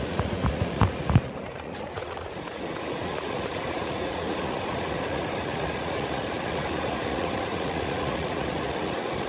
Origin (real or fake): fake